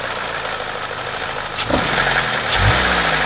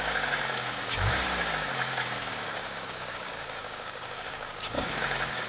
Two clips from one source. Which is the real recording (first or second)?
first